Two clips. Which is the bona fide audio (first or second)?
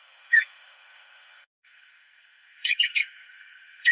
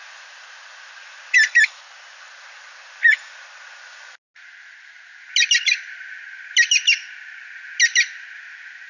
second